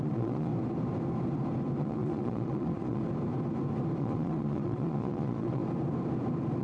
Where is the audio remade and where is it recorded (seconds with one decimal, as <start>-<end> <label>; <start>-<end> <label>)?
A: 0.0-0.5 remade; 0.5-1.8 recorded; 1.8-3.0 remade; 3.0-4.0 recorded; 4.0-5.6 remade; 5.6-6.6 recorded